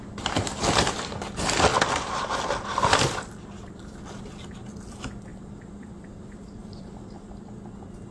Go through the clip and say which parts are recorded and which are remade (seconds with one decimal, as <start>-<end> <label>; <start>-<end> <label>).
0.0-1.7 recorded; 1.7-2.3 remade; 2.3-2.9 recorded; 2.9-4.2 remade; 4.2-5.3 recorded; 5.3-7.3 remade; 7.3-8.1 recorded